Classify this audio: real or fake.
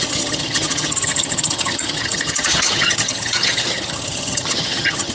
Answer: fake